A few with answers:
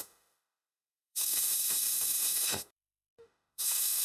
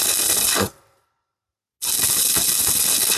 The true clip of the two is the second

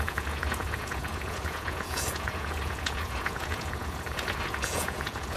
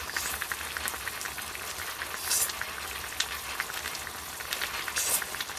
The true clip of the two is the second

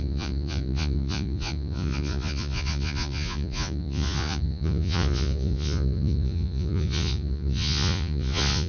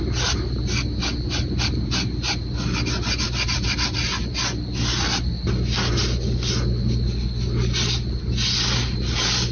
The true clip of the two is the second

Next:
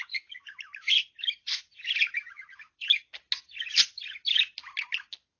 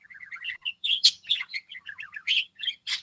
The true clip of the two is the first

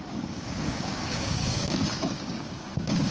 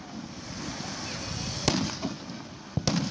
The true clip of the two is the second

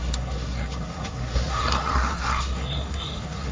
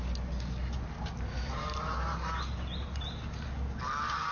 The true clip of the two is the second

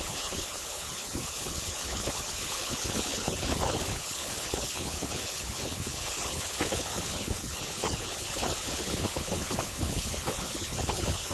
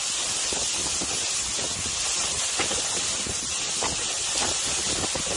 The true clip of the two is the second